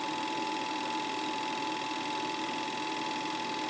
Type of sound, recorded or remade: recorded